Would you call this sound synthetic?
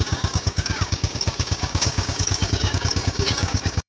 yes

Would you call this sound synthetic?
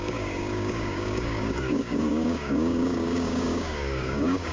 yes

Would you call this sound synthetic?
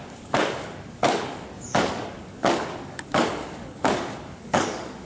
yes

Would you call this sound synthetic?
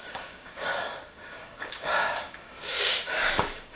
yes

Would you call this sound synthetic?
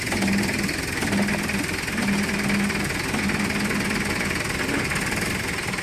no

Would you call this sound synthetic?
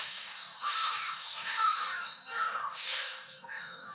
yes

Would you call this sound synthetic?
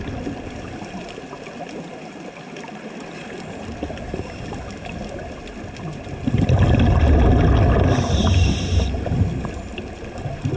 no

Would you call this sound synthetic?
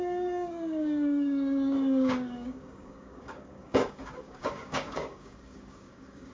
yes